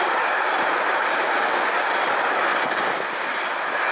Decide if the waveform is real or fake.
real